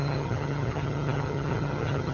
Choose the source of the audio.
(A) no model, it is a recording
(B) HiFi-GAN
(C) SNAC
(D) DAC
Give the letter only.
B